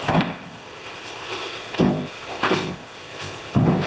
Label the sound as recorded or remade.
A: remade